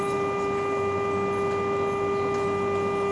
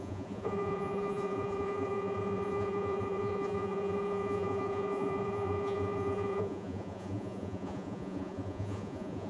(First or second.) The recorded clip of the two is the first